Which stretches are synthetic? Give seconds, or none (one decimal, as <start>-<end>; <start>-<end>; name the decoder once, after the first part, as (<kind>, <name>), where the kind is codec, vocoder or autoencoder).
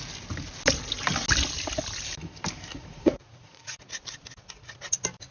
2.7-3.6 (vocoder, Vocos)